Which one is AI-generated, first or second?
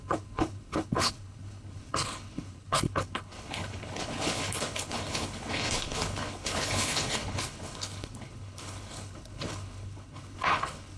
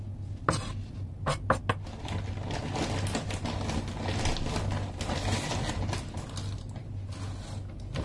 first